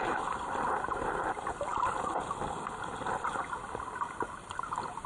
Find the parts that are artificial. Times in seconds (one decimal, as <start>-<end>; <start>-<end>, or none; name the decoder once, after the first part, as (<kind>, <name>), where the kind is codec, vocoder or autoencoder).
none